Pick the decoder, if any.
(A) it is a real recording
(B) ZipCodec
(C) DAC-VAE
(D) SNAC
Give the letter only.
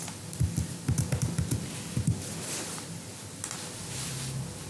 A